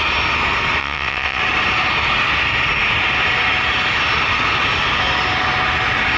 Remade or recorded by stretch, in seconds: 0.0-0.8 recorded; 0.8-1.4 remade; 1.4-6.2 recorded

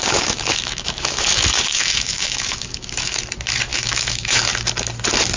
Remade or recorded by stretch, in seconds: 0.0-3.2 remade; 3.2-3.7 recorded; 3.7-4.5 remade; 4.5-5.4 recorded